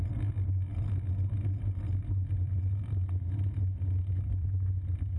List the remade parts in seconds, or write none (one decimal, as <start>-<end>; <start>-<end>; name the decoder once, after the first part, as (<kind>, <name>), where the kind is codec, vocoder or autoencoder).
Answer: none